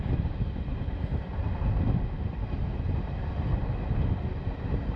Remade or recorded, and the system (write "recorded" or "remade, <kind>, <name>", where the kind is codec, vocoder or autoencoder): recorded